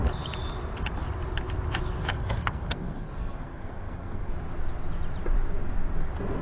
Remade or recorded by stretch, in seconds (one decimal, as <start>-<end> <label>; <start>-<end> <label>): 0.0-2.1 recorded; 2.1-4.3 remade; 4.3-6.4 recorded